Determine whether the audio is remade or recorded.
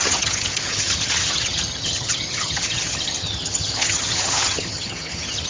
remade